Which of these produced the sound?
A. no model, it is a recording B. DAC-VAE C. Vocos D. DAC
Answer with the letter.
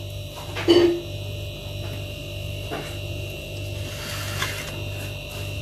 A